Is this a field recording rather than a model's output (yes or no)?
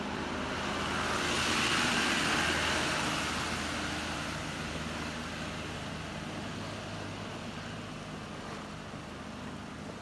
yes